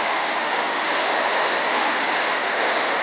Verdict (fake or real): fake